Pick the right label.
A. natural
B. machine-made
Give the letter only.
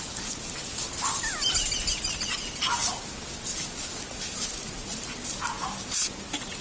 A